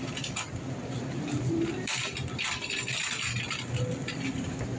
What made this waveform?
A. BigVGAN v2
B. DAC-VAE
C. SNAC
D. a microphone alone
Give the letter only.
D